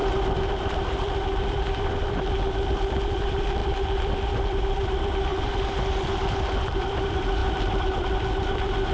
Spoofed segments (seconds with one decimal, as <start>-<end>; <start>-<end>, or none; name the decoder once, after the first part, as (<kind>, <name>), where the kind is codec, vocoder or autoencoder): 0.5-8.9 (vocoder, BigVGAN v2)